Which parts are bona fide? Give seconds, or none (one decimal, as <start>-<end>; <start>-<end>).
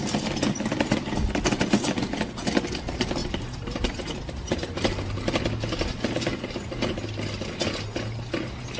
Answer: 0.0-3.2; 4.8-8.8